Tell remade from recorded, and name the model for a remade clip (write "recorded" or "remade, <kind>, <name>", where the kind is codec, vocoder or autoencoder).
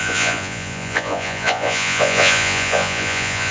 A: remade, vocoder, Vocos